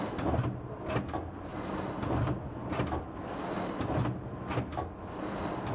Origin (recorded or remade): recorded